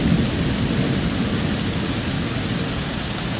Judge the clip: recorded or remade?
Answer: recorded